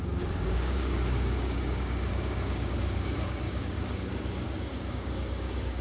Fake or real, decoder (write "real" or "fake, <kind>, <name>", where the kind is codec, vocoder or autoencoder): fake, codec, DAC